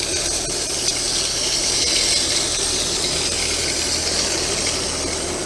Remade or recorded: recorded